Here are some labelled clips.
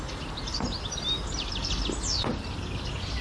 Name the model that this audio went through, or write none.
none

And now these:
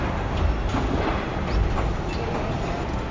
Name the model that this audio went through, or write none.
none